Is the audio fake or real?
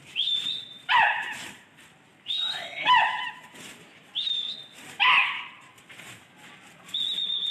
real